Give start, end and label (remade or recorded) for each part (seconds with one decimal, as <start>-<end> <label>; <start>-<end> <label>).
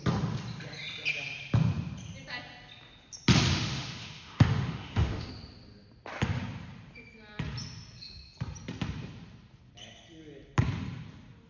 0.0-3.5 recorded; 3.5-5.3 remade; 5.3-11.5 recorded